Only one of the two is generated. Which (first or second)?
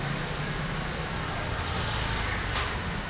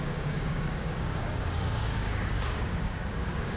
second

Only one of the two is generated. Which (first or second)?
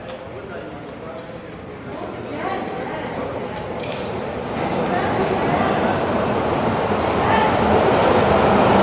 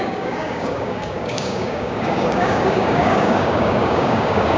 second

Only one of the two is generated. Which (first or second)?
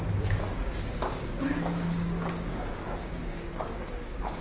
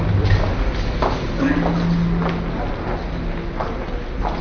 first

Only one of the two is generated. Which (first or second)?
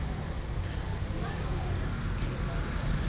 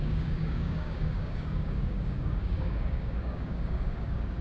second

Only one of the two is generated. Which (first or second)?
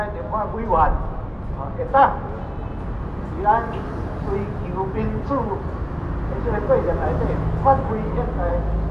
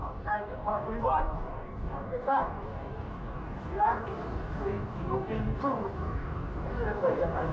second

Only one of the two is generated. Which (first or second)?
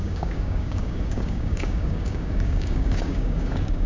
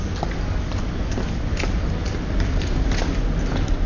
first